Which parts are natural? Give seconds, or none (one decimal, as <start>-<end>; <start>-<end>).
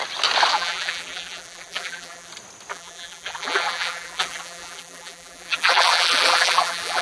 0.0-0.5; 2.3-2.7